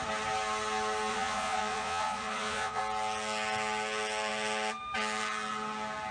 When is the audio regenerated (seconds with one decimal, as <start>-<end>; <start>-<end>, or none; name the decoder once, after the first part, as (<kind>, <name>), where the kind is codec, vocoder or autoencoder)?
1.1-2.8 (vocoder, Vocos)